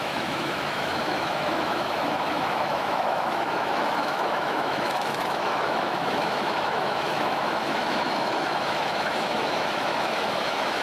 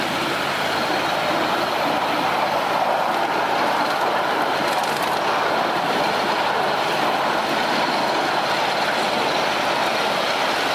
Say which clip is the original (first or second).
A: second